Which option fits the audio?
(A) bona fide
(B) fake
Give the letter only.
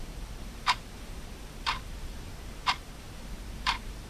B